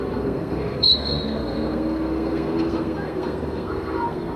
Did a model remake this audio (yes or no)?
yes